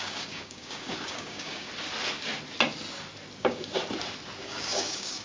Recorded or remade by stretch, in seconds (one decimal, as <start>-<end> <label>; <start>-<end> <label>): 0.0-1.7 remade; 1.7-3.4 recorded; 3.4-3.8 remade; 3.8-4.4 recorded; 4.4-5.2 remade